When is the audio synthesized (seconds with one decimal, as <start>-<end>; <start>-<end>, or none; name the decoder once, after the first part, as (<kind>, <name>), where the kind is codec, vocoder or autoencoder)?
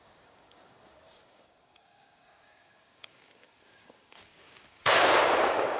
0.0-5.8 (codec, DAC)